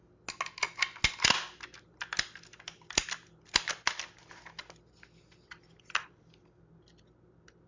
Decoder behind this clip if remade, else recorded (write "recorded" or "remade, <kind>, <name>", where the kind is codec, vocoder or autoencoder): recorded